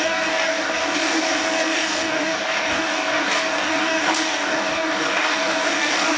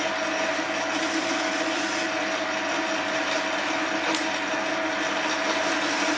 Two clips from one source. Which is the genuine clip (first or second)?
second